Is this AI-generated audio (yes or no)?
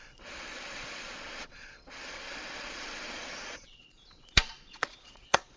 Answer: yes